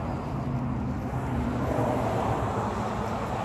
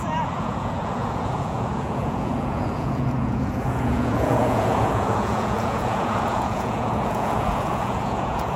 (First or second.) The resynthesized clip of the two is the second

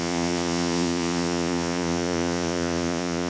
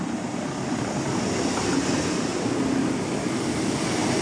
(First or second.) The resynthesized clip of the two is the first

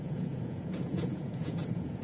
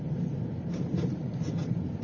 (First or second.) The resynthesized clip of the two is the first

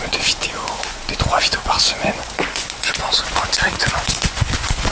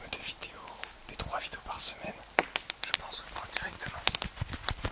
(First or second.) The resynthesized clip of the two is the first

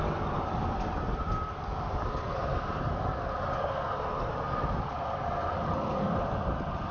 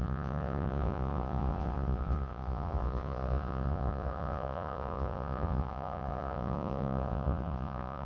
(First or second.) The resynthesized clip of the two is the second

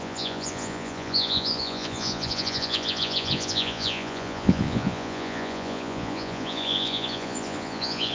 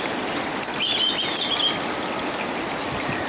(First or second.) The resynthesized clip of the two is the first